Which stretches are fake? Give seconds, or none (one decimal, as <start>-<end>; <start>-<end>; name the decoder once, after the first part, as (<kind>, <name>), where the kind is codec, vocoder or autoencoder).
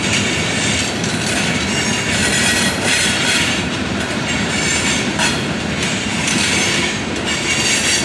2.2-7.0 (vocoder, BigVGAN v2)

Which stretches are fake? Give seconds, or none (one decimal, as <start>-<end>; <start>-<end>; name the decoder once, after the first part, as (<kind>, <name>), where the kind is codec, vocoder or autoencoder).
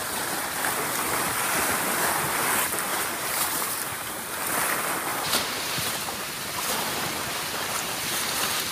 2.9-4.0 (vocoder, BigVGAN v2); 5.1-6.3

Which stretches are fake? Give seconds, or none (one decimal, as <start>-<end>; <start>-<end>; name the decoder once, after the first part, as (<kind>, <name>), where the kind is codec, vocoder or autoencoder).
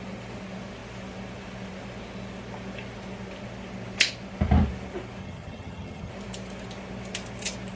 5.2-6.1 (vocoder, HiFi-GAN)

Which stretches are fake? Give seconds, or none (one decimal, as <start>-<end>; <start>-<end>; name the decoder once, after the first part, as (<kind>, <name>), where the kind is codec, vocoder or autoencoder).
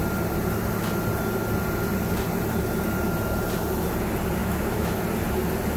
4.4-5.0 (autoencoder, DAC-VAE)